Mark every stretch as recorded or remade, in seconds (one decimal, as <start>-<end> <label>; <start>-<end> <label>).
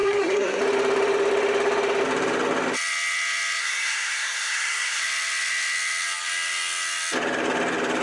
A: 0.0-0.6 remade; 0.6-3.6 recorded; 3.6-5.0 remade; 5.0-8.0 recorded